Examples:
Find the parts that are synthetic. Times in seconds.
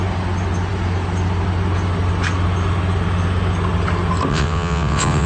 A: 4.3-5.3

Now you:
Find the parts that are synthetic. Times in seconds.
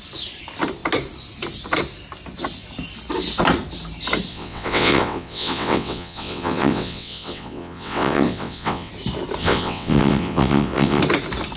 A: 4.3-8.9; 9.4-11.0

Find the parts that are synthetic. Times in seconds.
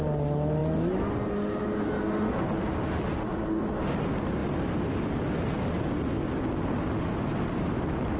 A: none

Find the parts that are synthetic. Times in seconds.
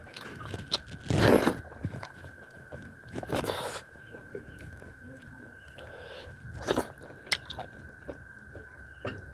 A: 0.0-0.8; 1.8-6.4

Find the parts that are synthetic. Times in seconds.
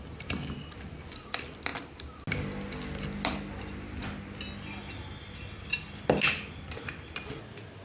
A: none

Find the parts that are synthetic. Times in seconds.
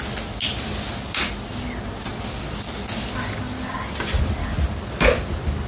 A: none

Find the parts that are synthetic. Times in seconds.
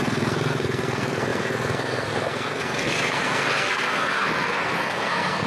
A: 0.0-5.5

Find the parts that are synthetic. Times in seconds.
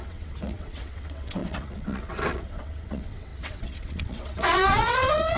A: 0.0-5.4